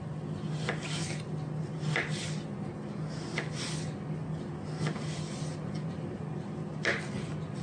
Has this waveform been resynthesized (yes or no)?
no